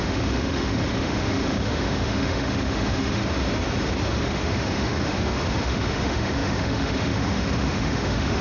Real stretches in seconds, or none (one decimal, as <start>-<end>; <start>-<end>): 3.2-4.2

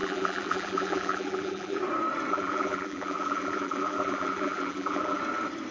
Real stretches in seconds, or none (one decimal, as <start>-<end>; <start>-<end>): 1.8-2.3; 5.2-5.7